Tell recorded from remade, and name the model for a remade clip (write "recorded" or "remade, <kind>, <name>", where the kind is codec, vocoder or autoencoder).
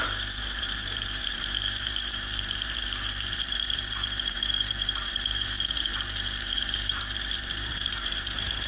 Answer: remade, vocoder, BigVGAN v2